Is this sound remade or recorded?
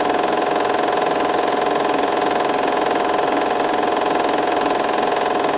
recorded